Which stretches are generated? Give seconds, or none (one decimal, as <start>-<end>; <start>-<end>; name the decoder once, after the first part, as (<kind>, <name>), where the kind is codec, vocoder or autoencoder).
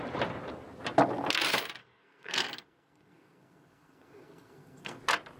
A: 1.8-5.0 (codec, SNAC)